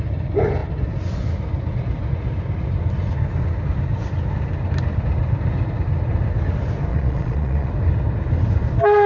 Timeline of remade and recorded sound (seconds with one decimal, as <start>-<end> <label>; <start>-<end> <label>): 0.0-6.9 recorded; 6.9-7.7 remade; 7.7-9.1 recorded